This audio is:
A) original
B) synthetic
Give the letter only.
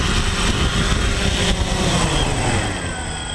A